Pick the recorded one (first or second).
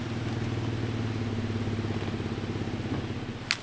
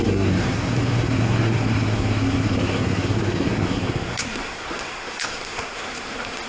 first